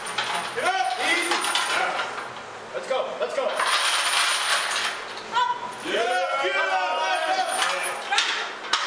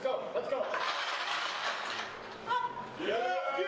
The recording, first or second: first